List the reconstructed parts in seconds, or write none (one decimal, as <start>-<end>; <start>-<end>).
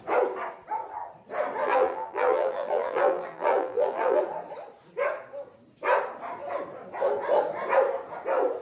1.6-4.2